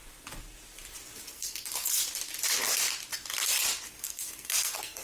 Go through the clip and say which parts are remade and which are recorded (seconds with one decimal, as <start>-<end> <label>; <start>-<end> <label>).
0.0-1.3 recorded; 1.3-2.0 remade; 2.0-3.9 recorded; 3.9-5.0 remade